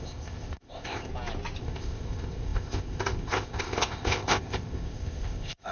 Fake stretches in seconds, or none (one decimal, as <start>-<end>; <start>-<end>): 0.0-1.1; 1.6-5.7